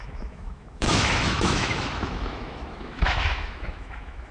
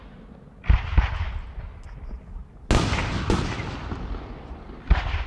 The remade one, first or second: first